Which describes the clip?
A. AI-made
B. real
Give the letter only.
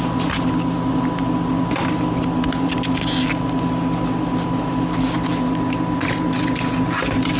B